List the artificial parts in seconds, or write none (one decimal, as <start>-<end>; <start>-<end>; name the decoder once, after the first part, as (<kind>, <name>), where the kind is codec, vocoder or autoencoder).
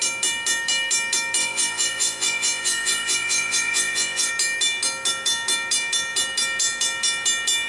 1.4-4.3 (vocoder, Vocos)